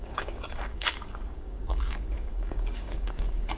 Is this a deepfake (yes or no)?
yes